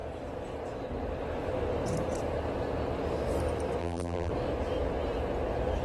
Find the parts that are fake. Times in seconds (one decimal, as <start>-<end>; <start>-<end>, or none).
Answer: 3.8-4.3